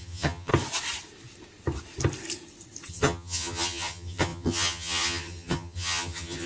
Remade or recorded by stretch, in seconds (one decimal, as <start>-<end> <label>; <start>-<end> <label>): 0.0-0.5 remade; 0.5-2.9 recorded; 2.9-6.5 remade